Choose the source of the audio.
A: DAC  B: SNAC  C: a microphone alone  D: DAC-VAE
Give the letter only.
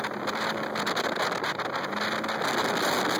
C